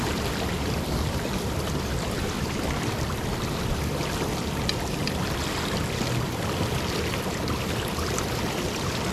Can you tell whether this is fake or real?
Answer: real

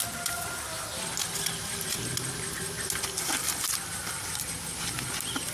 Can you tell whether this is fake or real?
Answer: real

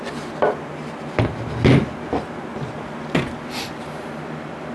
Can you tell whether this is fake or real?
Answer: real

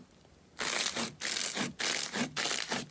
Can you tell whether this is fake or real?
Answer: real